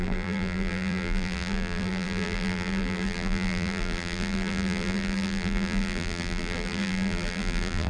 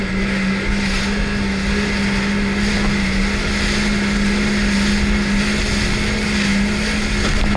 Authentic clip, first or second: second